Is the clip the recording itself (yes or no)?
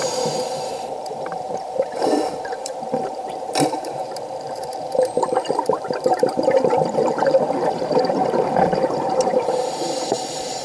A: no